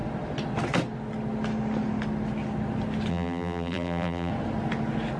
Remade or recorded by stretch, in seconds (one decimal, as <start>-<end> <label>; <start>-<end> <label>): 0.0-3.1 recorded; 3.1-4.3 remade; 4.3-5.2 recorded